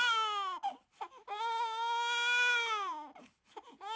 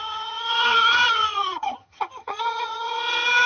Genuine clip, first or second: first